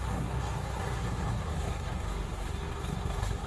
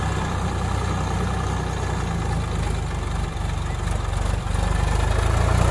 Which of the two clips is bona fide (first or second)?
second